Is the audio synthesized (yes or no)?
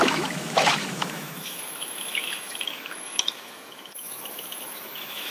yes